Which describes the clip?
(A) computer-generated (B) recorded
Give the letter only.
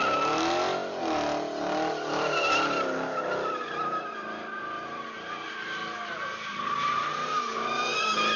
B